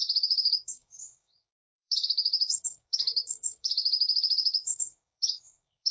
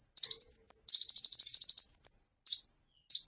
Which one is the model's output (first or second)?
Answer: first